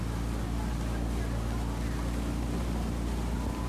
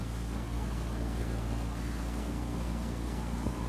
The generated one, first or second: second